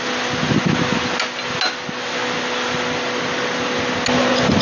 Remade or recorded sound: recorded